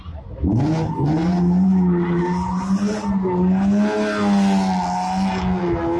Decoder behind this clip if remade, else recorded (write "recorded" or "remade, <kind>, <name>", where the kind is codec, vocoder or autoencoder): recorded